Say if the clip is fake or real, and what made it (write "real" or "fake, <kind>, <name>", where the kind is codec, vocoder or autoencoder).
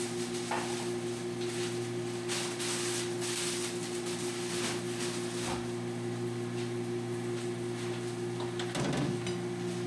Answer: real